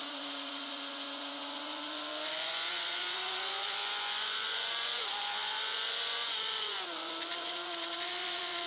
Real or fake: fake